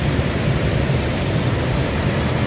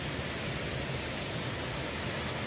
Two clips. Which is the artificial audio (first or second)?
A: first